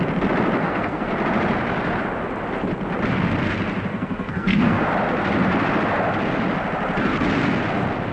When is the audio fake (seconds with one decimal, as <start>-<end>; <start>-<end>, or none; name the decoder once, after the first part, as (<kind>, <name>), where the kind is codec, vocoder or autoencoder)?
0.6-1.1 (codec, SNAC); 3.9-4.8